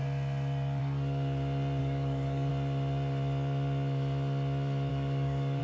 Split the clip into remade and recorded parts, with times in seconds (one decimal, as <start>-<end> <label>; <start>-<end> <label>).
0.0-1.8 recorded; 1.8-2.5 remade; 2.5-4.9 recorded; 4.9-5.6 remade